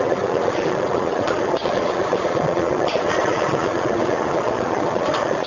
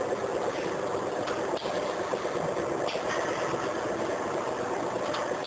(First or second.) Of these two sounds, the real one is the second